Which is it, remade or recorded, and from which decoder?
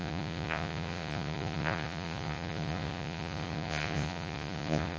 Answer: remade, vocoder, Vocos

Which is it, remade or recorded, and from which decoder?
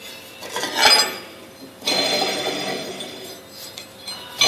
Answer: recorded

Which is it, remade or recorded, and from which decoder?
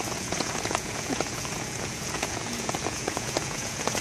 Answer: remade, vocoder, Vocos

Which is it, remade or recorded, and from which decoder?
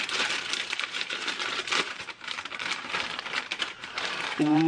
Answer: remade, vocoder, BigVGAN v2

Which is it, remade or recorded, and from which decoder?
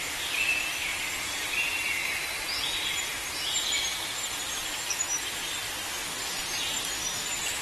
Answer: recorded